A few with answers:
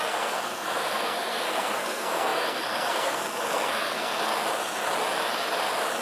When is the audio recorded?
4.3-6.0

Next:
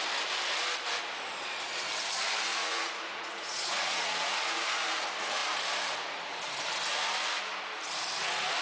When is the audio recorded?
0.0-2.5; 5.0-8.6

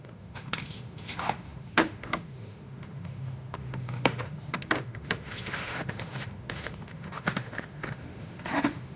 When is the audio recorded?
none